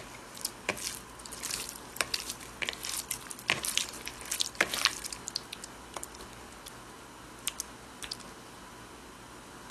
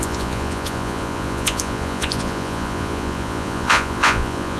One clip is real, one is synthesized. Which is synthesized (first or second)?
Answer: second